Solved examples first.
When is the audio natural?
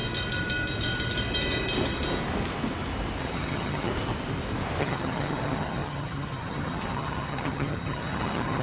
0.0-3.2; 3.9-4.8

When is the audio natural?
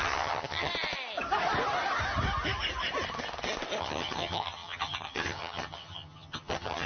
0.7-3.8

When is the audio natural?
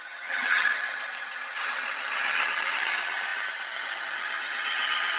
none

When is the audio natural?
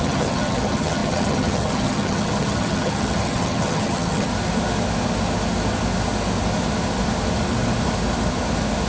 4.3-8.9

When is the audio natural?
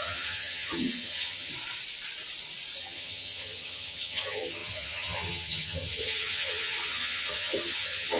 1.5-2.8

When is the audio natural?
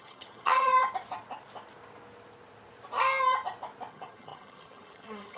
0.7-3.9